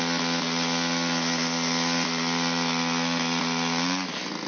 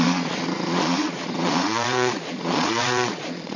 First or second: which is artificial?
second